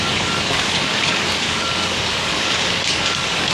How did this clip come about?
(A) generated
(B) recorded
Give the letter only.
A